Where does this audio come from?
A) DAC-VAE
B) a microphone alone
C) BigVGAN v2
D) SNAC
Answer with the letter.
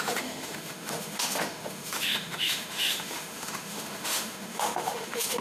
A